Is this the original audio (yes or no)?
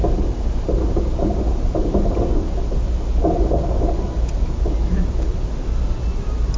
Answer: yes